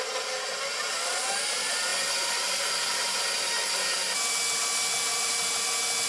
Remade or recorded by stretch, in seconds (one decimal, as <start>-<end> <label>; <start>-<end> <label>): 0.0-5.1 recorded; 5.1-5.6 remade; 5.6-6.1 recorded